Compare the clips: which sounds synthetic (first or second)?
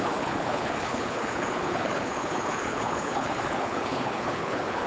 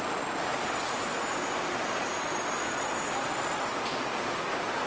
first